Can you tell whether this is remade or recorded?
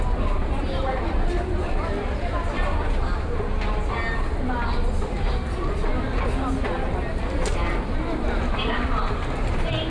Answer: recorded